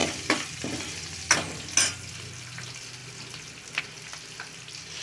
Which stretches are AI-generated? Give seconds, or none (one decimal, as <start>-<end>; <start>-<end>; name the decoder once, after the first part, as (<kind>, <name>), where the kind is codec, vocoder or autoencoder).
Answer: none